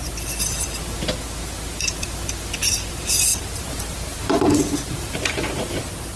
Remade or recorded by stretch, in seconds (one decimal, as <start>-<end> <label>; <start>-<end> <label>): 0.0-3.3 recorded; 3.3-5.2 remade; 5.2-6.2 recorded